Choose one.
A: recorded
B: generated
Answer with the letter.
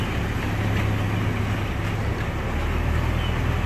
A